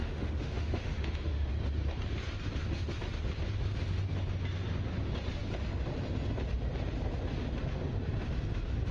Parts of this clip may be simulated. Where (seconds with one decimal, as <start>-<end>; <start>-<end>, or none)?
0.0-1.5